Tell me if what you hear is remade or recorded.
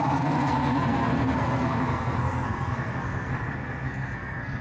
remade